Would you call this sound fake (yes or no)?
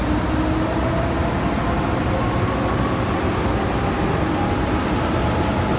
no